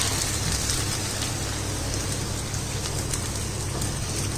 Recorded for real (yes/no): no